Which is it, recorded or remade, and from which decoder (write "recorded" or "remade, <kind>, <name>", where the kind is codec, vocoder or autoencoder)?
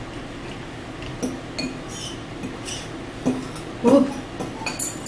recorded